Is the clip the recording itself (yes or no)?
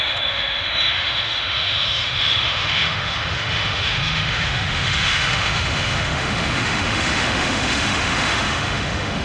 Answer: no